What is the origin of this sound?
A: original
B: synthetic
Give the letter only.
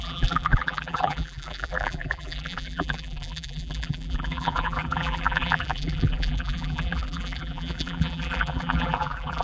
B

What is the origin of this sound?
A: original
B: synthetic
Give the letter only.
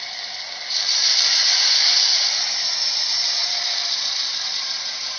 B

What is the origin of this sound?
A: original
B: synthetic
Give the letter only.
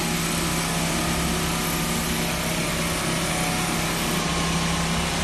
A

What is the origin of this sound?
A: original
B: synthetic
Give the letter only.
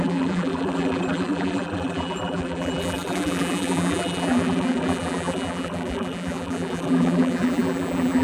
B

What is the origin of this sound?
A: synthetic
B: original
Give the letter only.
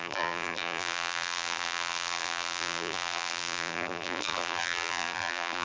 A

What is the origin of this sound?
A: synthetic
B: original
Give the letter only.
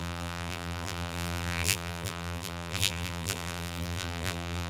A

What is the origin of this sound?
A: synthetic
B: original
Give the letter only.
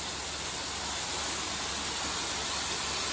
B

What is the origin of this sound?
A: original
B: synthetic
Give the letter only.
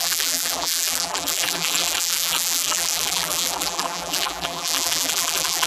B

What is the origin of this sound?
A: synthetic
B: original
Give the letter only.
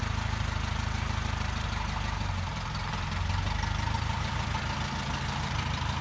B